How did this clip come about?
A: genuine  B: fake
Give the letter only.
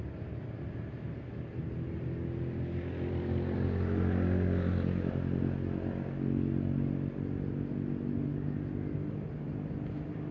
A